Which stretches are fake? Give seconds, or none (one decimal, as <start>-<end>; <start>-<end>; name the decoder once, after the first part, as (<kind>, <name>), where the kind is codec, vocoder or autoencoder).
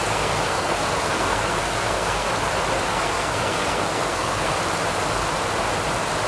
0.0-2.3 (codec, SNAC); 2.9-4.6